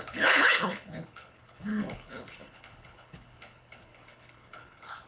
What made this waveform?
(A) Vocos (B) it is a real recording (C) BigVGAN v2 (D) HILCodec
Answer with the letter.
D